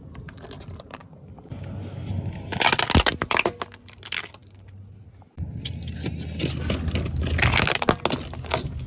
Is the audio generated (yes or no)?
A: no